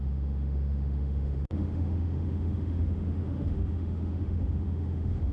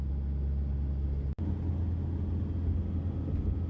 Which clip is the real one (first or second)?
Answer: second